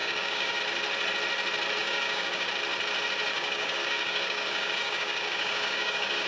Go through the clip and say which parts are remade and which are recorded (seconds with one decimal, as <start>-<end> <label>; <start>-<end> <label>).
0.0-0.6 remade; 0.6-1.8 recorded; 1.8-2.5 remade; 2.5-3.3 recorded; 3.3-6.3 remade